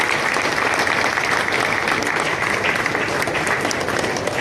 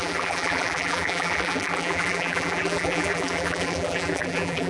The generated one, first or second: second